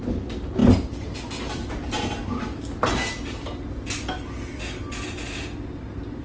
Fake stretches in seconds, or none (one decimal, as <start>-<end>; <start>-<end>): none